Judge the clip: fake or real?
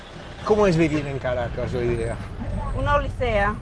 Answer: real